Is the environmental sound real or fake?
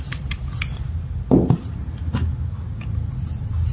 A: real